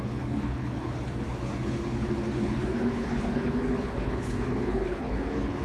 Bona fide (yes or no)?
no